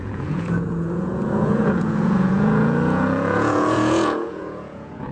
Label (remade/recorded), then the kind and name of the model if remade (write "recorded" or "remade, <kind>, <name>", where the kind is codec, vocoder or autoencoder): remade, vocoder, Vocos